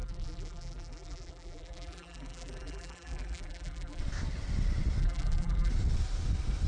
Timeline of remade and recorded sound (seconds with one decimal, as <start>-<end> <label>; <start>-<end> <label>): 0.0-4.0 remade; 4.0-5.0 recorded; 5.0-5.7 remade; 5.7-6.7 recorded